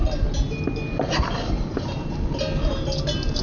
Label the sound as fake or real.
real